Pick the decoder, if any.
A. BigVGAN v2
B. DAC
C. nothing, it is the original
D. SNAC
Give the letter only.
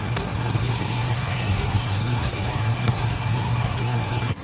D